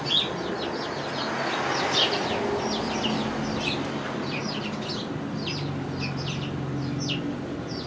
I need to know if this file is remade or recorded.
recorded